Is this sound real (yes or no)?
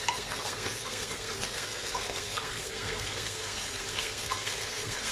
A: no